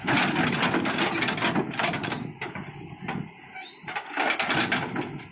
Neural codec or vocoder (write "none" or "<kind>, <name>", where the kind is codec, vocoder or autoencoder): none